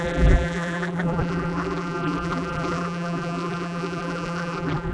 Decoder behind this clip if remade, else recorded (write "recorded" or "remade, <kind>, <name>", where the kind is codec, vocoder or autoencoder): remade, vocoder, BigVGAN v2